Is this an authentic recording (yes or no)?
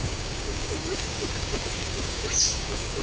no